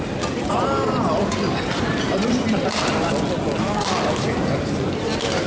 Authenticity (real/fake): real